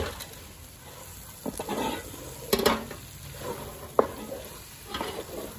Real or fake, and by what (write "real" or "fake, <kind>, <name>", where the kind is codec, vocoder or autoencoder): real